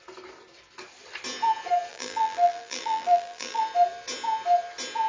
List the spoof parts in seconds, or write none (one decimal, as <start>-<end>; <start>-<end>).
1.9-3.6